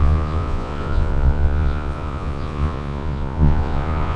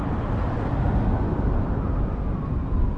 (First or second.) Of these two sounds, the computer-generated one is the first